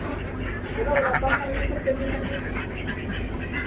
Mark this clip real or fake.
real